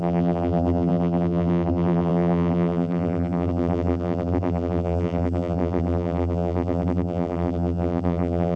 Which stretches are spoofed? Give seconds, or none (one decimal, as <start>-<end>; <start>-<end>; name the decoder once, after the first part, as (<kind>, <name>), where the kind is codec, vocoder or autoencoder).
0.0-8.6 (vocoder, BigVGAN v2)